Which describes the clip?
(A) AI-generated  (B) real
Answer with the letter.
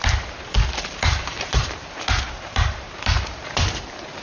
A